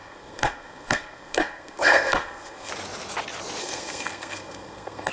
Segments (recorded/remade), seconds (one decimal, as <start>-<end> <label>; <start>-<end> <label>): 0.0-2.7 remade; 2.7-3.6 recorded; 3.6-5.1 remade